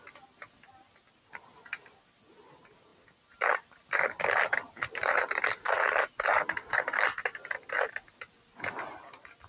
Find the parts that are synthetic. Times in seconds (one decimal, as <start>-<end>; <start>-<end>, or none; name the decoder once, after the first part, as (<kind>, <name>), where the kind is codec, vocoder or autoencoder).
none